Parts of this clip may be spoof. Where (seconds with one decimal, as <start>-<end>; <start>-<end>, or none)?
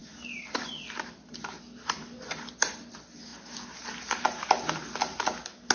0.0-2.9